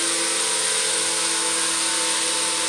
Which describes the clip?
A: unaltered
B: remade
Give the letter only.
A